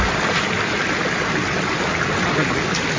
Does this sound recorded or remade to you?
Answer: recorded